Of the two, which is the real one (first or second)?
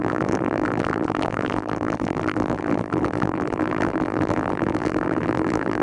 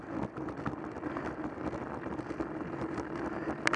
second